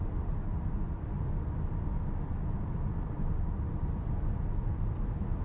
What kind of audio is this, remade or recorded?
recorded